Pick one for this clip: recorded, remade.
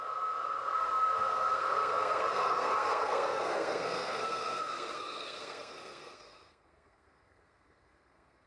remade